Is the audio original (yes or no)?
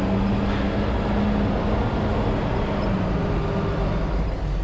yes